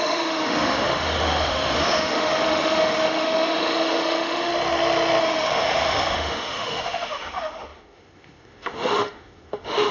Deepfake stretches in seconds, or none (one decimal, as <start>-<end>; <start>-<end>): 0.0-4.5; 5.2-9.9